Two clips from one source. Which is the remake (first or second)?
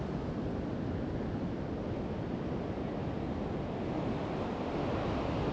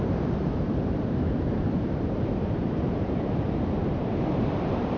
second